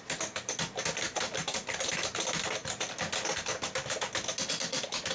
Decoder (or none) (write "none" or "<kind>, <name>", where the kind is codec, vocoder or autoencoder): none